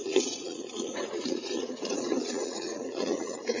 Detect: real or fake fake